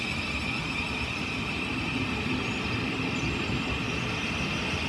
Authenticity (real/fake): real